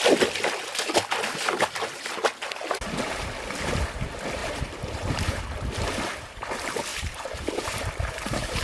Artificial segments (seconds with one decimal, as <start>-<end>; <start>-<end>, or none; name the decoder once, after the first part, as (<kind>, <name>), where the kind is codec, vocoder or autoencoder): 4.4-5.4 (vocoder, BigVGAN v2); 6.9-8.6